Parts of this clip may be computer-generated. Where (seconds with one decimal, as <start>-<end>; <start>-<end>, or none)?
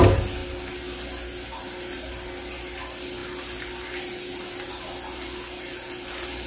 none